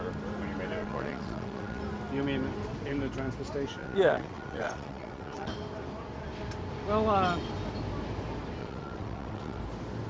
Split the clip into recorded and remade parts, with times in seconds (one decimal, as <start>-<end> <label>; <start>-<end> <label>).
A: 0.0-0.8 recorded; 0.8-1.8 remade; 1.8-3.8 recorded; 3.8-5.5 remade; 5.5-8.6 recorded; 8.6-9.6 remade; 9.6-10.1 recorded